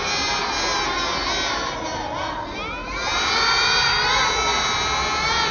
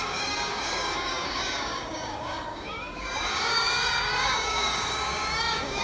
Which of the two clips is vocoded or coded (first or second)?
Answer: second